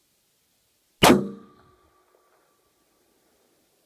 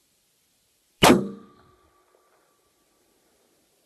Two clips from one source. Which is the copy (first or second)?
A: second